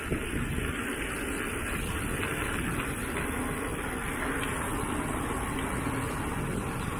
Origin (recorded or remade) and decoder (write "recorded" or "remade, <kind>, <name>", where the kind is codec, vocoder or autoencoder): recorded